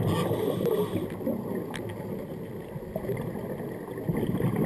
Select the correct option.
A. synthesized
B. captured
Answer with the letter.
B